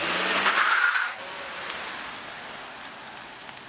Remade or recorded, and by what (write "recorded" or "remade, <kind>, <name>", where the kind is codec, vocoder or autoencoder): recorded